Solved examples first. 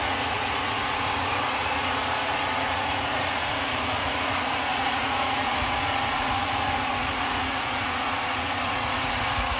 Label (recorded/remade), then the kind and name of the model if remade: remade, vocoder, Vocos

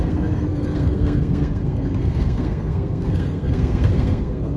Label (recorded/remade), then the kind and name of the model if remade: remade, codec, SNAC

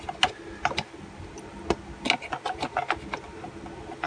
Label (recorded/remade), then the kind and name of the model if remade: recorded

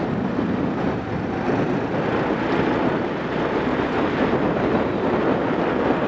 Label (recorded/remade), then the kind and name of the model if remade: recorded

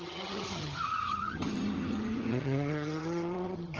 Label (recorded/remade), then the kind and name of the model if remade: remade, vocoder, HiFi-GAN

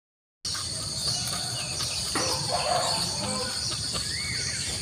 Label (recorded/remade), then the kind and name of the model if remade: recorded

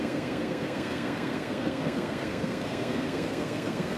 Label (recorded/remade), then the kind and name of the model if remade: remade, codec, SNAC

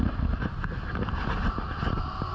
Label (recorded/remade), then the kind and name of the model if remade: recorded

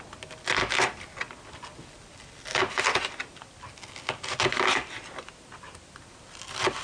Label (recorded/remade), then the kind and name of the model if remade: recorded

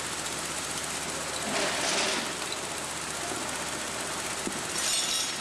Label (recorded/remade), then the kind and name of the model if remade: recorded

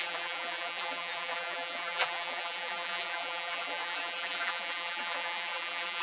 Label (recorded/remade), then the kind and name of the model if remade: remade, vocoder, BigVGAN v2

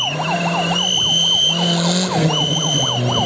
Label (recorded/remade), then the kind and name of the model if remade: recorded